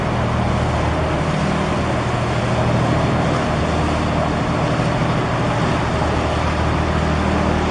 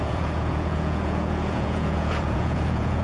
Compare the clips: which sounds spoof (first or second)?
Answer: second